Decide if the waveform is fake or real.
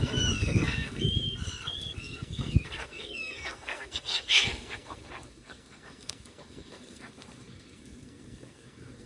fake